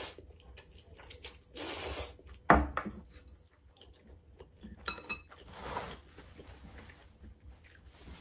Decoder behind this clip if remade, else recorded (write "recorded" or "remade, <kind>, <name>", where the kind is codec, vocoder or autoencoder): recorded